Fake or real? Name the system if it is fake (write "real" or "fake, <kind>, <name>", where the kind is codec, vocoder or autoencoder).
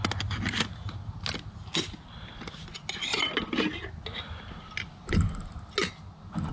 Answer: real